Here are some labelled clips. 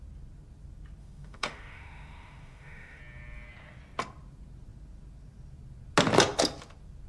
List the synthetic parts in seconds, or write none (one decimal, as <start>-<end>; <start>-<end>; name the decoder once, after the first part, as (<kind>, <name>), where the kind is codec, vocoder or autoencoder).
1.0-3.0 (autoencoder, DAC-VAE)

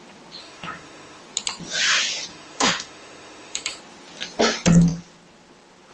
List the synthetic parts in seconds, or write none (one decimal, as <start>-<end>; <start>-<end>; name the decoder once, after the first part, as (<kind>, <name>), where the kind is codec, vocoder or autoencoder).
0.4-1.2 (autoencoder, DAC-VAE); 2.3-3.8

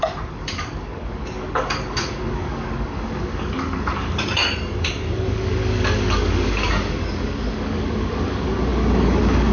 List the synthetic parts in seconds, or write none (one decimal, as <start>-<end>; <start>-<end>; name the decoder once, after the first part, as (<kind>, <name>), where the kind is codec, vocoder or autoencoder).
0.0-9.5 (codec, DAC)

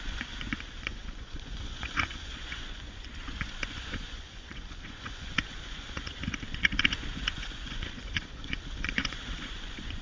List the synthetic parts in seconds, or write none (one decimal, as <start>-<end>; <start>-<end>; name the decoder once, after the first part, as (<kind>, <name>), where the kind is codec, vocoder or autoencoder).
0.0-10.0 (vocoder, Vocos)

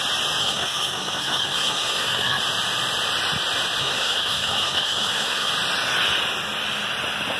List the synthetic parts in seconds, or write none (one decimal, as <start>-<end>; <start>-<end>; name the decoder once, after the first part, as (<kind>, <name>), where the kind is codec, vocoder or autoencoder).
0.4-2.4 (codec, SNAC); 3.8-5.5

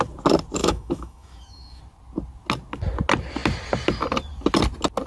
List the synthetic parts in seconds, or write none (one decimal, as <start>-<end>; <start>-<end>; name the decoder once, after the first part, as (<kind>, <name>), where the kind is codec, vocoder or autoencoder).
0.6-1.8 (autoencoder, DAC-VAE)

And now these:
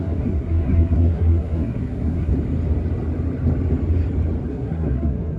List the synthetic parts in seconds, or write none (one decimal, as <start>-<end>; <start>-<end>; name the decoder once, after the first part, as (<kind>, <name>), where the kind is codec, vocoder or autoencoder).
0.0-2.3 (codec, SNAC); 4.5-5.4

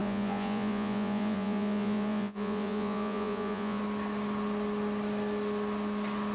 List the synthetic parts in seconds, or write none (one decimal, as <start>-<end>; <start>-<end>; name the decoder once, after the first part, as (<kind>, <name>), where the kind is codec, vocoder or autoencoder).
0.0-3.8 (vocoder, Vocos)